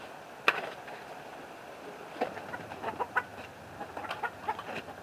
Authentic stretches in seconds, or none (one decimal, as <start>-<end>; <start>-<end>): 0.0-5.0